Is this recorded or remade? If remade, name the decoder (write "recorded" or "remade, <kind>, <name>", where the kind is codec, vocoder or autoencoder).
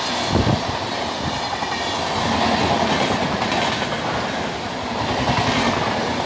recorded